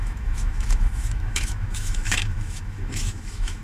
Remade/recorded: remade